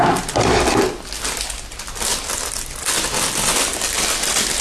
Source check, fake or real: real